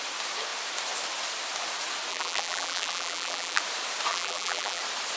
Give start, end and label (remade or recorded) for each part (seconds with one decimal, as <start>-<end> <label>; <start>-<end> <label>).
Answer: 0.0-2.1 recorded; 2.1-3.6 remade; 3.6-4.1 recorded; 4.1-4.8 remade; 4.8-5.2 recorded